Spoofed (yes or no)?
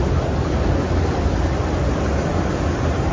no